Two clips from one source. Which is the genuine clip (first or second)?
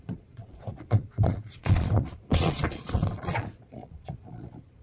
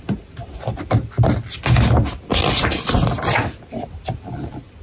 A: second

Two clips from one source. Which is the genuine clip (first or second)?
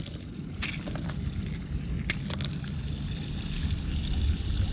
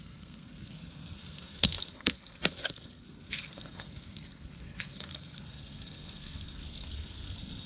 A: first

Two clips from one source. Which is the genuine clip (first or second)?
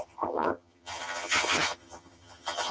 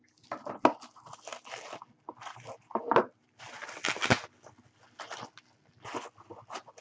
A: second